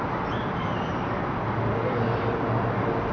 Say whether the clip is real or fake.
real